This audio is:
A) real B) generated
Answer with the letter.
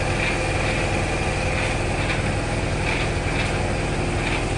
A